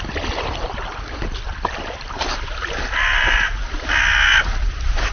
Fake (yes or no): no